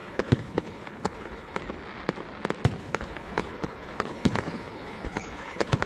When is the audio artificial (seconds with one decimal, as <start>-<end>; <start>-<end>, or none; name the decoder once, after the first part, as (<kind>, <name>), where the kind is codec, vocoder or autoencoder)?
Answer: 0.0-1.6 (codec, HILCodec); 2.8-5.9